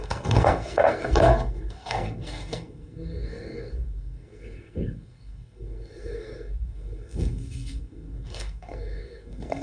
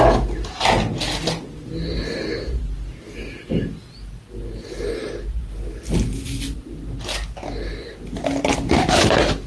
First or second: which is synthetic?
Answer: first